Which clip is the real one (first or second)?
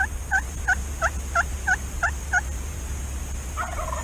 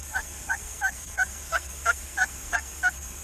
first